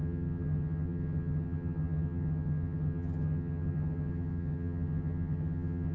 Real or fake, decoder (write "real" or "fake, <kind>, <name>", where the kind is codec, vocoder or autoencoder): fake, vocoder, HiFi-GAN